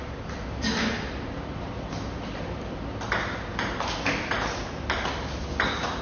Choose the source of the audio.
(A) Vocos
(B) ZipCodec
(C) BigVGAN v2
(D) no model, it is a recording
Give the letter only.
D